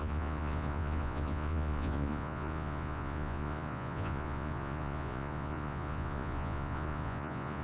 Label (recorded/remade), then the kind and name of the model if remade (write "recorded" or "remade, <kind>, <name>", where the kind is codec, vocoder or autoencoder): remade, vocoder, Vocos